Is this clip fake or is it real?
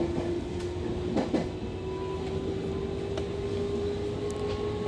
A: real